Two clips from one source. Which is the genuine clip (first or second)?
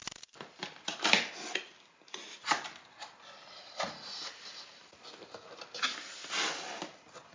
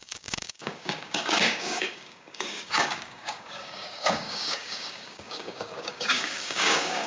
first